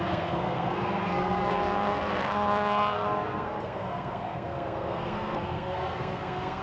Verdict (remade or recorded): remade